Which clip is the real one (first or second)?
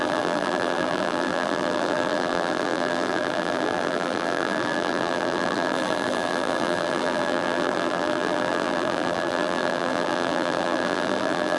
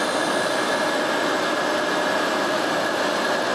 second